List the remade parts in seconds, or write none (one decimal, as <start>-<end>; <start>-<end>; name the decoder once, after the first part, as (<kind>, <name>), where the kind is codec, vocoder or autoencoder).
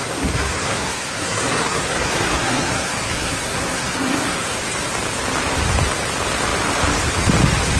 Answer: 0.0-4.6 (codec, SNAC)